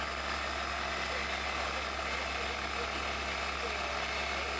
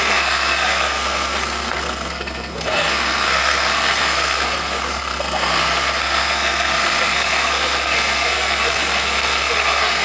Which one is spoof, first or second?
second